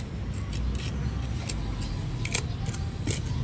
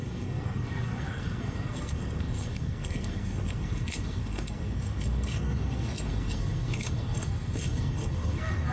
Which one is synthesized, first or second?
second